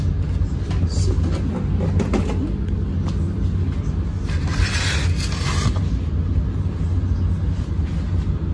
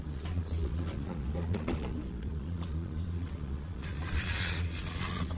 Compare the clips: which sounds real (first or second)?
first